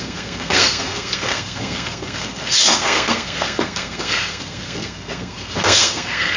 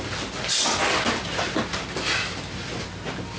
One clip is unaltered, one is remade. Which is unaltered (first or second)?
second